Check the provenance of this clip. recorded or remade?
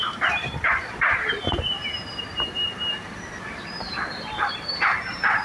remade